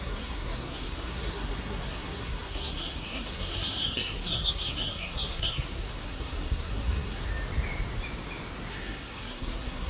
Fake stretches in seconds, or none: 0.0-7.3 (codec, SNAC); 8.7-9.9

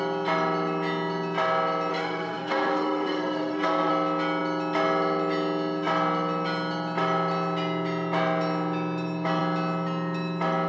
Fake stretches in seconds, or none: 1.9-3.9 (codec, SNAC)

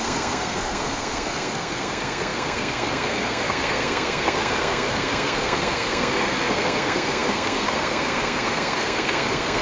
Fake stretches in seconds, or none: 0.0-9.6 (codec, SNAC)

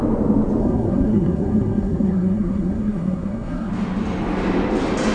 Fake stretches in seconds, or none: 0.6-3.7 (codec, SNAC)